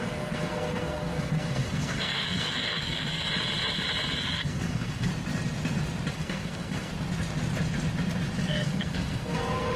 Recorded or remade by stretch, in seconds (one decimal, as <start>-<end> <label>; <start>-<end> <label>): 0.0-3.3 remade; 3.3-4.2 recorded; 4.2-5.1 remade; 5.1-6.1 recorded; 6.1-6.9 remade; 6.9-8.4 recorded; 8.4-9.8 remade